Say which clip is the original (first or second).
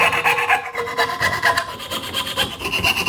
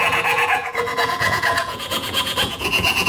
first